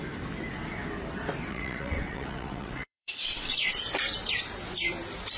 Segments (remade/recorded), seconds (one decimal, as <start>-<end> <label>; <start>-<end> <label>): 0.0-1.5 recorded; 1.5-3.8 remade; 3.8-5.4 recorded